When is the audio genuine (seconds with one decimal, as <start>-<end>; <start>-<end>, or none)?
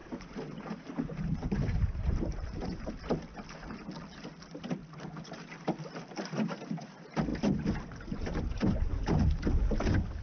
2.9-10.2